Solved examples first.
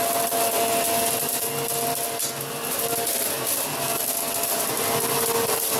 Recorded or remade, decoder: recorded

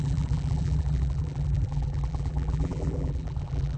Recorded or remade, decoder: remade, vocoder, BigVGAN v2